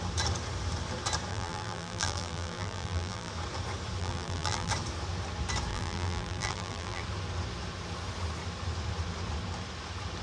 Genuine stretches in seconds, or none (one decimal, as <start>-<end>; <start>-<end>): 0.0-1.3; 3.3-4.0; 4.7-5.7; 7.0-10.2